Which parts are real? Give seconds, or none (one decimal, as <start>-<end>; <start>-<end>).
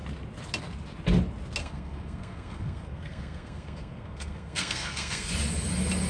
0.0-1.6; 5.3-6.1